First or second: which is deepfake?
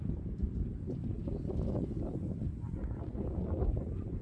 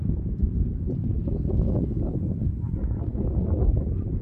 first